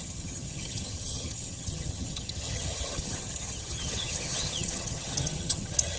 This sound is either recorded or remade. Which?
remade